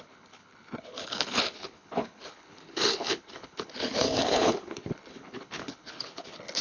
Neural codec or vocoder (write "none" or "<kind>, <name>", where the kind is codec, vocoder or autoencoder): codec, HILCodec